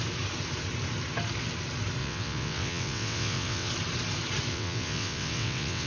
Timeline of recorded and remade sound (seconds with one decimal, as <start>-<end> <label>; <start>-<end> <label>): 0.0-2.0 recorded; 2.0-3.7 remade; 3.7-4.5 recorded; 4.5-5.9 remade